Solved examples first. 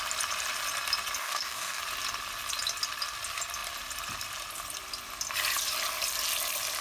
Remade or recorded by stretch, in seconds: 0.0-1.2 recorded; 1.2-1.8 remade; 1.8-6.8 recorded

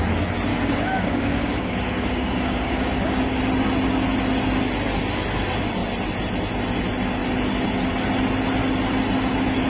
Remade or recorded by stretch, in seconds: 0.0-0.5 recorded; 0.5-3.4 remade; 3.4-9.7 recorded

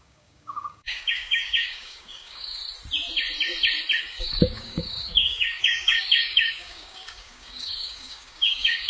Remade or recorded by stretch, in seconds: 0.0-2.6 remade; 2.6-4.0 recorded; 4.0-8.9 remade